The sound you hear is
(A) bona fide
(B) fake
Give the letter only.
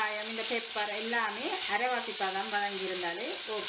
A